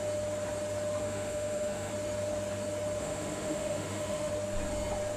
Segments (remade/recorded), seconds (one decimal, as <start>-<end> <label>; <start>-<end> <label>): 0.0-1.0 recorded; 1.0-1.9 remade; 1.9-3.0 recorded; 3.0-4.3 remade; 4.3-5.2 recorded